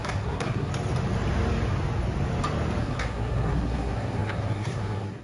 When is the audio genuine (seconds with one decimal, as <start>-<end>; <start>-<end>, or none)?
0.7-2.8